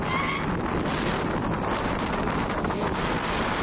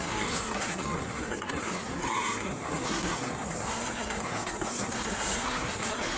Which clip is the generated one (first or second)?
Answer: second